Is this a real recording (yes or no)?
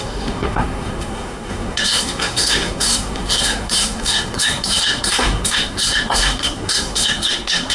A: no